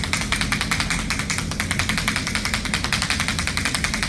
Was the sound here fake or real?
real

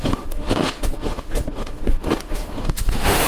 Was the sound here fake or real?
fake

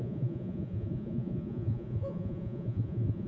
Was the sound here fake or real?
fake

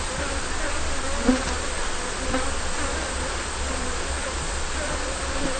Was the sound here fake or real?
real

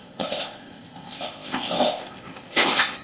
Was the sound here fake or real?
fake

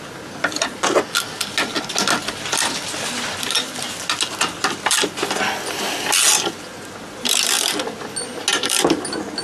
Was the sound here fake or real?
real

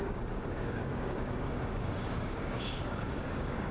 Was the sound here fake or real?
fake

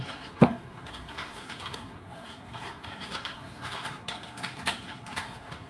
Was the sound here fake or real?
fake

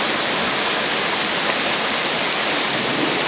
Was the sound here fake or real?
real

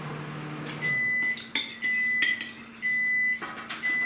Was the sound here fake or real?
real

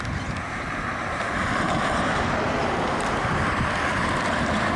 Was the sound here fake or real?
fake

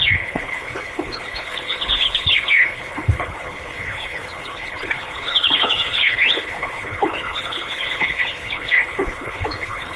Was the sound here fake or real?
fake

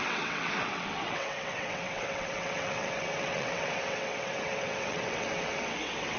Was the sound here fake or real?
fake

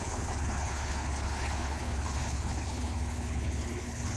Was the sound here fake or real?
fake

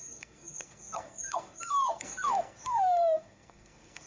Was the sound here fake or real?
fake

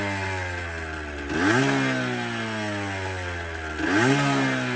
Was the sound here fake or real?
real